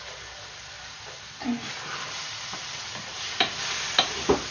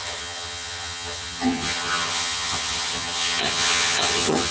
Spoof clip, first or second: second